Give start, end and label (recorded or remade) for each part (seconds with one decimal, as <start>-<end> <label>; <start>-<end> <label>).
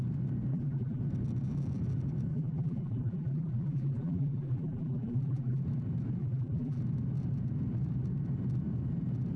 0.0-0.5 recorded; 0.5-1.0 remade; 1.0-2.3 recorded; 2.3-5.6 remade; 5.6-6.2 recorded; 6.2-6.8 remade; 6.8-9.4 recorded